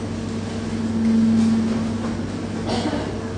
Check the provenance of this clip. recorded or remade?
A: recorded